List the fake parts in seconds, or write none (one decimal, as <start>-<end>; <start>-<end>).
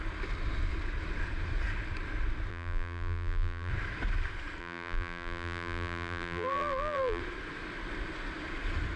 2.5-3.7; 4.6-7.2